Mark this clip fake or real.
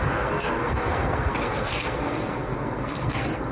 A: fake